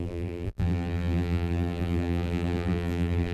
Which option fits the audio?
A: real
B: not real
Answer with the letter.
B